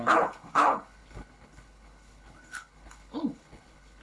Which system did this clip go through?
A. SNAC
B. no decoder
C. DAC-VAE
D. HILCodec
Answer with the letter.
D